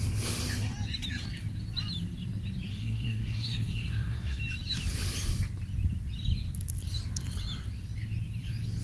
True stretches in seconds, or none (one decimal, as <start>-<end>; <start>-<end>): 0.0-2.7; 4.4-8.8

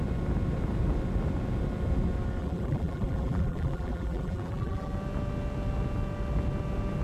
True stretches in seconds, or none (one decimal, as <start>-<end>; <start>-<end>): 0.0-2.4; 4.9-7.0

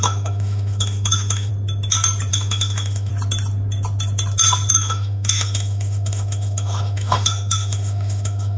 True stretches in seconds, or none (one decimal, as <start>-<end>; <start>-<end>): 1.5-2.3; 3.1-4.7

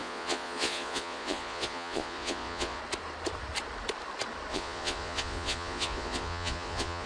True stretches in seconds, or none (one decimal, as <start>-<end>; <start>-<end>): 2.8-4.5

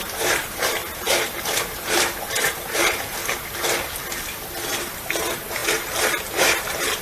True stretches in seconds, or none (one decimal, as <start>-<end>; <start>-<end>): 3.2-4.7

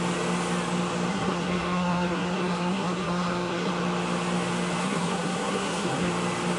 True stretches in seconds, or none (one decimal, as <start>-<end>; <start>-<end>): 0.0-1.1; 3.7-4.8; 6.1-6.6

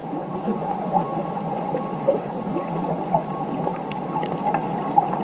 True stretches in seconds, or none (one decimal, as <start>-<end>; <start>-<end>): 3.1-5.2

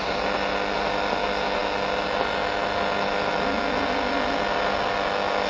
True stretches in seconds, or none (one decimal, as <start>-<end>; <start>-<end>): 0.0-5.5